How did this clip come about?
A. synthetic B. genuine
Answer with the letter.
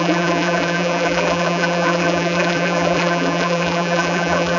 A